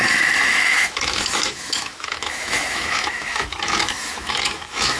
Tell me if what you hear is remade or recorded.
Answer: remade